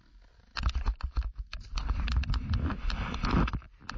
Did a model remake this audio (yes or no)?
no